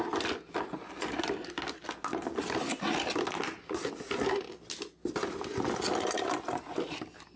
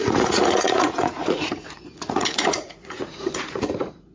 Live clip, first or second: first